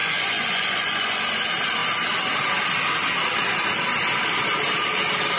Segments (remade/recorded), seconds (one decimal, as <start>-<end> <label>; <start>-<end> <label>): 0.0-1.2 remade; 1.2-5.4 recorded